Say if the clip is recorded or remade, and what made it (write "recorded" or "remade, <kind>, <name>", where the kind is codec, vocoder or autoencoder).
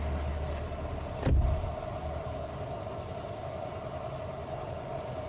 recorded